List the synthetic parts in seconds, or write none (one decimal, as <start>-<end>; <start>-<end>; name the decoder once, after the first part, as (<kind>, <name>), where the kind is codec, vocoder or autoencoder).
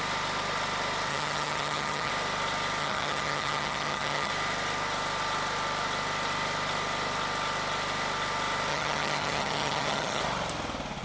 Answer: 1.1-2.1 (vocoder, HiFi-GAN); 2.8-4.3; 8.7-10.2